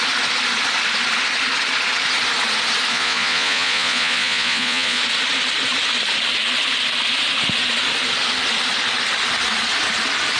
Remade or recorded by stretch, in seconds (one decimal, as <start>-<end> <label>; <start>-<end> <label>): 0.0-2.9 recorded; 2.9-5.0 remade; 5.0-10.4 recorded